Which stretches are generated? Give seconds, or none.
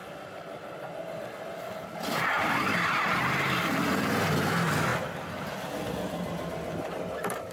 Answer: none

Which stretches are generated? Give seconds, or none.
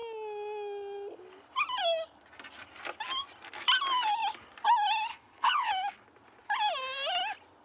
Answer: 5.1-5.7 (codec, HILCodec)